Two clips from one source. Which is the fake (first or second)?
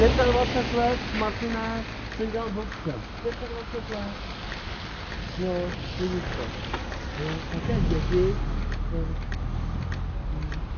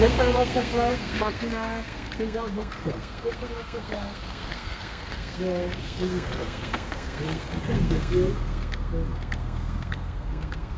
second